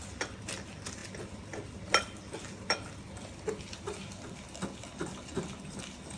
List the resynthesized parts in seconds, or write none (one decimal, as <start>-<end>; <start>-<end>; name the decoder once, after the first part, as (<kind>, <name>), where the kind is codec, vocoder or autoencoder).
none